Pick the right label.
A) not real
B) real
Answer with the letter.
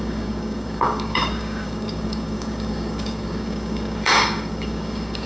A